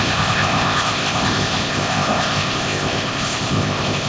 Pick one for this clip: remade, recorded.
remade